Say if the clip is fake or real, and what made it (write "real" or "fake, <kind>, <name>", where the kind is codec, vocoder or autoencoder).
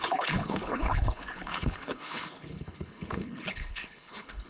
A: fake, codec, HILCodec